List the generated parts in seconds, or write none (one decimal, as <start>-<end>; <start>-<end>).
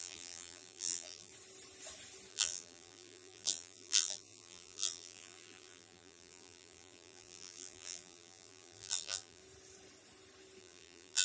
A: 0.0-1.3; 2.3-9.4; 10.6-11.2